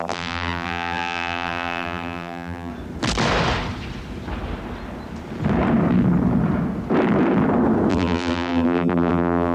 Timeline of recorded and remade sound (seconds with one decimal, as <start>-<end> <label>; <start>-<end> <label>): 0.0-2.7 remade; 2.7-7.9 recorded; 7.9-9.5 remade